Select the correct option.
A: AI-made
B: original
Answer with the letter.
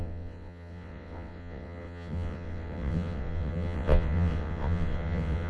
A